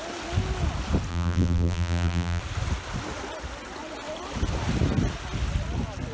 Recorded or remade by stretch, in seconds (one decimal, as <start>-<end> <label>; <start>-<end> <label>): 0.0-1.1 recorded; 1.1-2.4 remade; 2.4-6.1 recorded